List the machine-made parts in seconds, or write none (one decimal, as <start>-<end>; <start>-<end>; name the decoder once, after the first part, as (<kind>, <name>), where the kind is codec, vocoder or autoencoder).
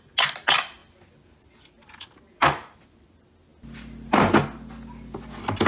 none